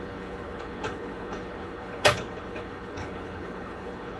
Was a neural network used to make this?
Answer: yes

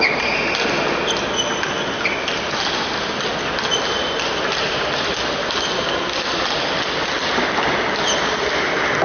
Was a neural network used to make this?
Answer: no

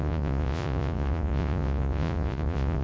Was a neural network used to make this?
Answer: yes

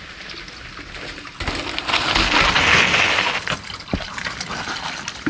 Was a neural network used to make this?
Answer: no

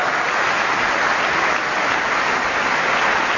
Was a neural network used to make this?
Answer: no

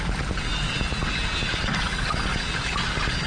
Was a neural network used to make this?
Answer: no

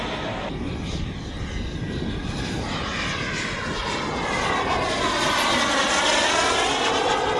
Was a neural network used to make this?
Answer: no